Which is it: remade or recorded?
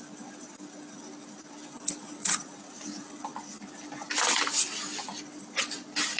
remade